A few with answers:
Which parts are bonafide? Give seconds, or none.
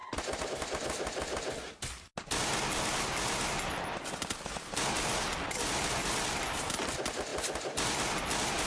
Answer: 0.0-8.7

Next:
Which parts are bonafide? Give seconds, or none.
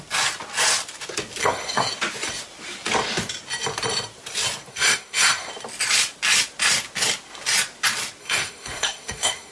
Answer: 0.0-1.4; 1.9-4.7; 5.5-8.2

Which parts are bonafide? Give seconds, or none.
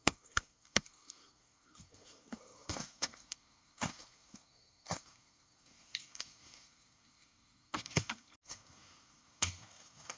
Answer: none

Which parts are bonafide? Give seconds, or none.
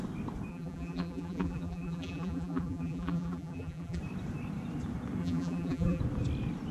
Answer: 0.0-0.5; 4.0-5.2; 6.0-6.7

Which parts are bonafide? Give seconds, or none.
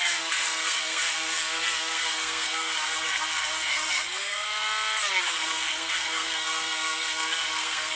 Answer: 4.5-5.2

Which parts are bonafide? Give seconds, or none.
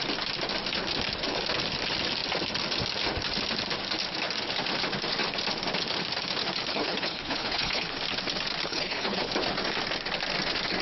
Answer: 0.0-6.7; 7.9-8.7; 9.3-10.8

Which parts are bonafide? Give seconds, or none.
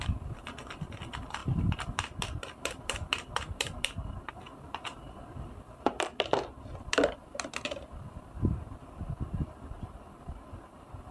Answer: 7.2-8.0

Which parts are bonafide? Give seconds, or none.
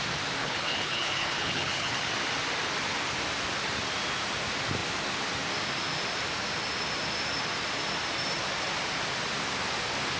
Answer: 0.0-0.4; 2.1-10.2